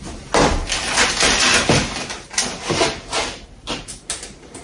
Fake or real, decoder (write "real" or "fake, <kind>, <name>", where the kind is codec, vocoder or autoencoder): real